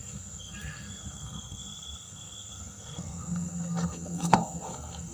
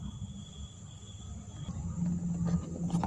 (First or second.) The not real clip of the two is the first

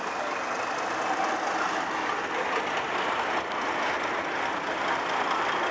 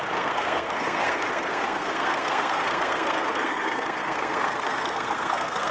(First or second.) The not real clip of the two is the second